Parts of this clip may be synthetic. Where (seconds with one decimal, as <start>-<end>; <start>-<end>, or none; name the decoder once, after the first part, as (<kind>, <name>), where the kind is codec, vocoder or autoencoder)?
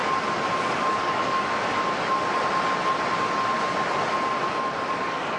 0.6-1.7 (codec, DAC); 4.9-5.4